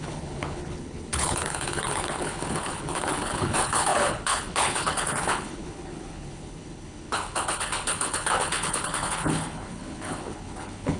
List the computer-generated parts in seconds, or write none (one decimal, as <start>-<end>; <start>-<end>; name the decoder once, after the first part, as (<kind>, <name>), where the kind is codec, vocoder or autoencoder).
0.0-11.0 (codec, HILCodec)